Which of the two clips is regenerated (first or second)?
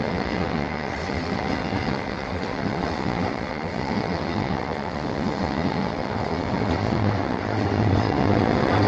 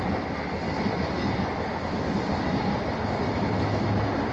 first